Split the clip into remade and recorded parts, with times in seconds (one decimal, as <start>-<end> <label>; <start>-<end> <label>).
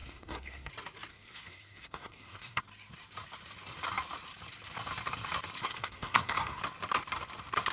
0.0-0.7 remade; 0.7-1.1 recorded; 1.1-2.6 remade; 2.6-5.6 recorded; 5.6-6.6 remade; 6.6-7.7 recorded